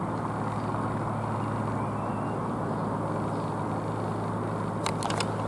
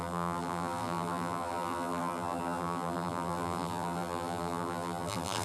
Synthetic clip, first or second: second